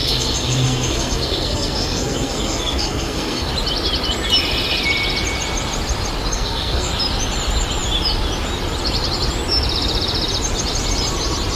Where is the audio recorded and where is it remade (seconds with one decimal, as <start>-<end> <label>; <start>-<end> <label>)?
0.0-3.5 remade; 3.5-6.3 recorded; 6.3-6.9 remade; 6.9-11.6 recorded